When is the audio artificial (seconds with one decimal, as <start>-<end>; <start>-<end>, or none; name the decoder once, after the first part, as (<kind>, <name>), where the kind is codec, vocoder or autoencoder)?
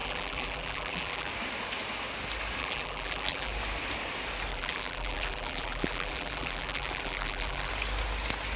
0.0-1.3 (vocoder, BigVGAN v2); 2.6-3.5; 4.5-7.7